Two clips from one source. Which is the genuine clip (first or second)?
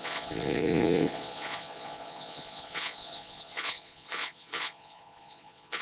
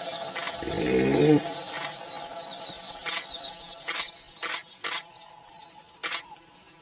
second